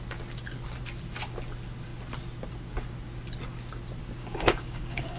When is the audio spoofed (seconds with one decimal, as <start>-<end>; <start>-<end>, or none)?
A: 4.2-5.2